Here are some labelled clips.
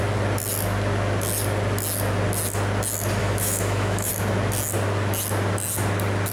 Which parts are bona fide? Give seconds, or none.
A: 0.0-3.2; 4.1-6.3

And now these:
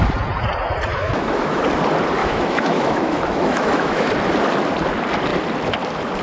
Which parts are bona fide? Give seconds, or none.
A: 0.0-0.9; 1.6-2.2; 4.1-6.2